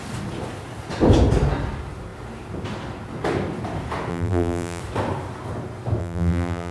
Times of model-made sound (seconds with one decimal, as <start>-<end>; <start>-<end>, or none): 4.1-4.8; 6.0-6.7